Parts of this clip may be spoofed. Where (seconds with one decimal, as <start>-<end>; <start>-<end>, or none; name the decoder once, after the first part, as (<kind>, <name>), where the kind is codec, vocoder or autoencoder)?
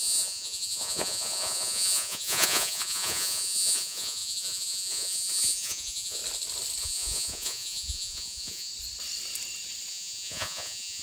0.0-6.2 (vocoder, Vocos); 6.8-8.7; 9.9-11.0